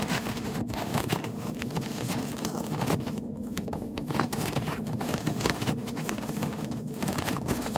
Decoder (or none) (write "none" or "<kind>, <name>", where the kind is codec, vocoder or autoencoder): autoencoder, DAC-VAE